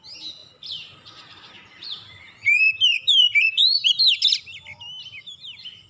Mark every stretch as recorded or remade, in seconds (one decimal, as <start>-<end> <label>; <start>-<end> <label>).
0.0-0.4 recorded; 0.4-3.9 remade; 3.9-5.9 recorded